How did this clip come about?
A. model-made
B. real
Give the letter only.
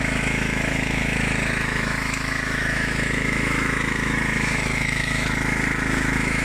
A